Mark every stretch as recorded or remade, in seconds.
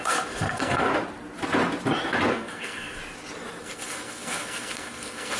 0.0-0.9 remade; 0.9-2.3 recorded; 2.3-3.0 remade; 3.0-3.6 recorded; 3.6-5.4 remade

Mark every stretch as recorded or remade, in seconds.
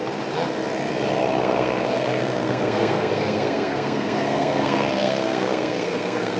0.0-1.4 recorded; 1.4-6.4 remade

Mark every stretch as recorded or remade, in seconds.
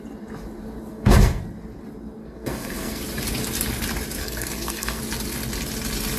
0.0-0.9 recorded; 0.9-1.4 remade; 1.4-2.2 recorded; 2.2-3.0 remade; 3.0-4.2 recorded; 4.2-5.0 remade; 5.0-6.2 recorded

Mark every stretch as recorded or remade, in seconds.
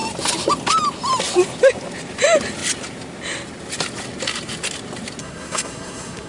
0.0-5.2 recorded; 5.2-6.3 remade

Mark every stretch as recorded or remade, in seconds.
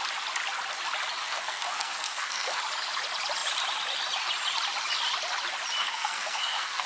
0.0-1.2 recorded; 1.2-2.6 remade; 2.6-5.8 recorded; 5.8-6.9 remade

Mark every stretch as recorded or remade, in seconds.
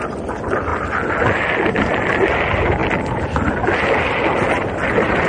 0.0-5.3 recorded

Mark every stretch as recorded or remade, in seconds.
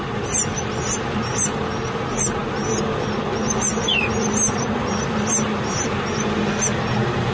0.0-7.3 recorded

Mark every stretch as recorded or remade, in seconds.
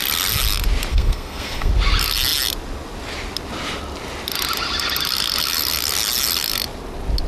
0.0-0.9 recorded; 0.9-1.7 remade; 1.7-7.3 recorded